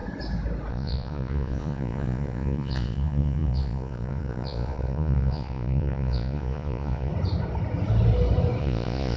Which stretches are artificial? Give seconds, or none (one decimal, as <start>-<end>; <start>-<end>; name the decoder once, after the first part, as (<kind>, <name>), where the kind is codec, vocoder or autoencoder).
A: 0.7-7.1 (vocoder, Vocos); 8.6-9.2